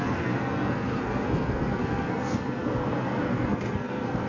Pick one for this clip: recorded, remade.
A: remade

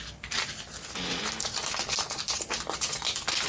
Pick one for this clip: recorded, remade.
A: recorded